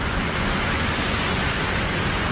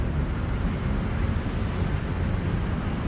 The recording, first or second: second